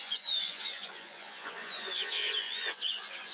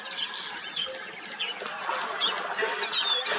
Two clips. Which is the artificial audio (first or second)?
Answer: first